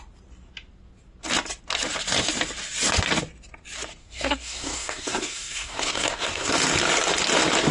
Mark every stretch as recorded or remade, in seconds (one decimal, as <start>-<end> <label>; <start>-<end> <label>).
0.0-4.0 recorded; 4.0-6.5 remade; 6.5-7.7 recorded